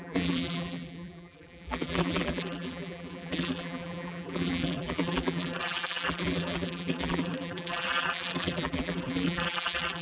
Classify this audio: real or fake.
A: fake